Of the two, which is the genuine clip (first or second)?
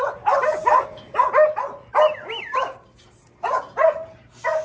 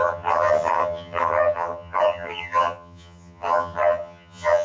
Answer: first